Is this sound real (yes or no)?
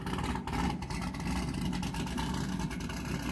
yes